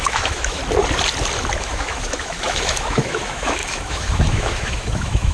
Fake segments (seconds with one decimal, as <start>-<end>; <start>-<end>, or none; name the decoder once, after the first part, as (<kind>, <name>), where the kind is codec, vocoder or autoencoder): 0.0-0.6 (autoencoder, DAC-VAE); 1.6-5.3